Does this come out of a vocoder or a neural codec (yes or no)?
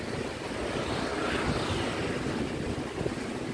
no